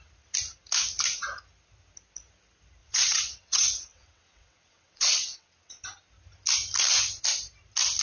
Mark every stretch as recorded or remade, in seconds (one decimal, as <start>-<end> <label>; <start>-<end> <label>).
0.0-2.8 recorded; 2.8-5.8 remade; 5.8-8.0 recorded